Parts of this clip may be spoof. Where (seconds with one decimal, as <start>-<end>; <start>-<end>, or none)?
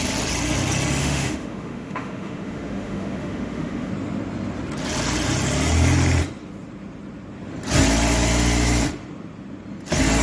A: 1.0-3.9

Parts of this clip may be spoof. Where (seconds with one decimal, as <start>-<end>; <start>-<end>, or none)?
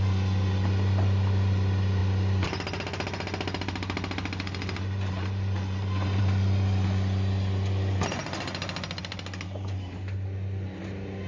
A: none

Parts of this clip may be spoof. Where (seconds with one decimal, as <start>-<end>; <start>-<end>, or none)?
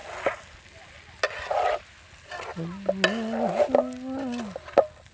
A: none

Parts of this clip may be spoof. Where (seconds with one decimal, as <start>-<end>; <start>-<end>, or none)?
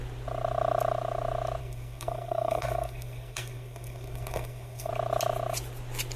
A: 1.6-4.9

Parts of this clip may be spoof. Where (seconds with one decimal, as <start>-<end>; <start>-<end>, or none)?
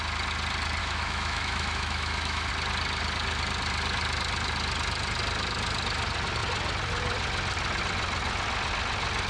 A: 0.8-2.5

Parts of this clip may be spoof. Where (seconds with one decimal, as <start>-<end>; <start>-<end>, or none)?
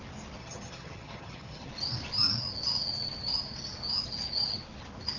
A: 0.4-1.7